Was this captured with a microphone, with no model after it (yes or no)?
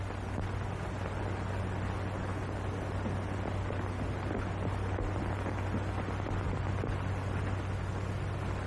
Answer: yes